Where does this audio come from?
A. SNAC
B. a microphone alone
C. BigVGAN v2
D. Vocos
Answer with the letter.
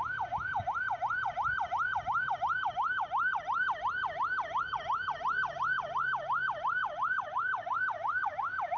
D